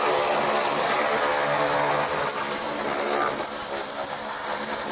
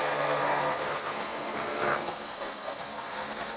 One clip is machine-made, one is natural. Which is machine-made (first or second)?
second